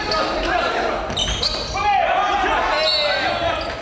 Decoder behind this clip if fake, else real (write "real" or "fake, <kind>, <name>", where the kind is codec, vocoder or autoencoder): real